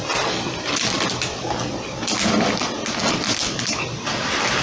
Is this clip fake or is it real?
real